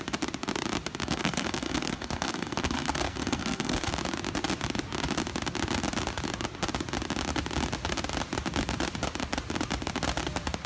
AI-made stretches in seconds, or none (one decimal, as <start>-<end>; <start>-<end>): 1.0-3.9